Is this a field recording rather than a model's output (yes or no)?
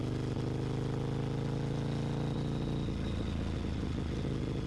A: yes